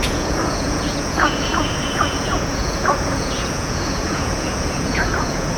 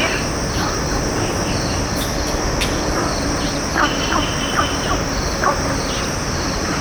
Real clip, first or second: second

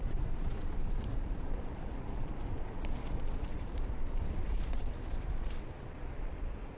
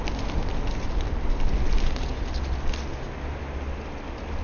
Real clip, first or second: second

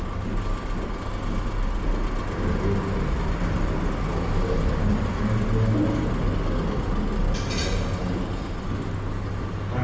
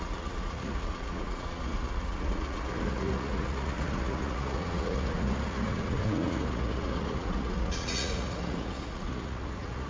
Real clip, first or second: first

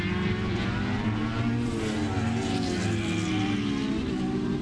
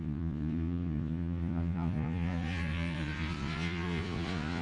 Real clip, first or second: first